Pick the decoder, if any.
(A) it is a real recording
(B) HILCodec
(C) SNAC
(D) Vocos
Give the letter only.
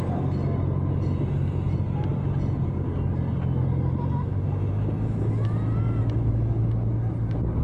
A